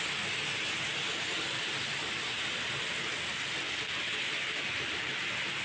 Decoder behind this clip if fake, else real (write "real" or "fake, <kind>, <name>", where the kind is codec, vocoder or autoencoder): real